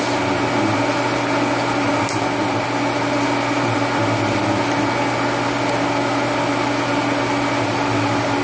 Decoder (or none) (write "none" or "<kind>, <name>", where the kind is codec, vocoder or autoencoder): none